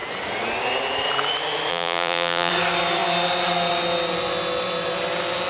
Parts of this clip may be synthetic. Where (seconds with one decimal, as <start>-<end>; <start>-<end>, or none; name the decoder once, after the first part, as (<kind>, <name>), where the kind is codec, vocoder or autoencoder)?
1.7-2.5 (vocoder, BigVGAN v2)

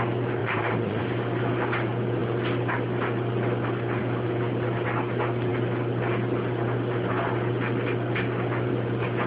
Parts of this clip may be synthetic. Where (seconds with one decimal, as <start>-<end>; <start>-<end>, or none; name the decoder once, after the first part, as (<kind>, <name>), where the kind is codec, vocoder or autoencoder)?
0.4-1.0 (vocoder, Vocos)

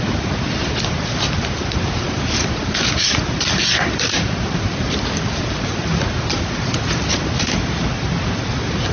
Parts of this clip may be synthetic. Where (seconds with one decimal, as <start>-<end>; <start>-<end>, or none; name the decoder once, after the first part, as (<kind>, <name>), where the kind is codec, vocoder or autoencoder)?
none

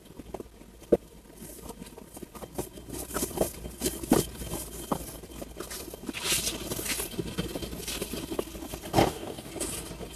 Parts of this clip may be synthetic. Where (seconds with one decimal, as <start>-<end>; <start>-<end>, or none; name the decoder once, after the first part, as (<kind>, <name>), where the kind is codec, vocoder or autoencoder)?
9.0-9.5 (codec, DAC)

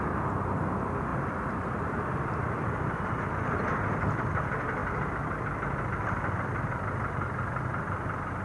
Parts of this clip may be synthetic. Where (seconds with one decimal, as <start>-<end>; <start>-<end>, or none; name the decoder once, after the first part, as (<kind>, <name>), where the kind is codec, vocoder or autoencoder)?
1.1-3.4 (vocoder, BigVGAN v2)